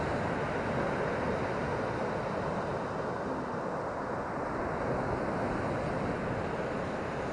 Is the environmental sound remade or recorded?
recorded